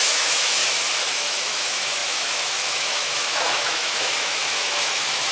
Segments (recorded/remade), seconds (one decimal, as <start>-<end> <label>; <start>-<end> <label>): 0.0-0.6 remade; 0.6-1.1 recorded; 1.1-5.3 remade